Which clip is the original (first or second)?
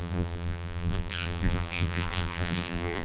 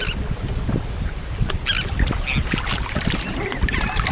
second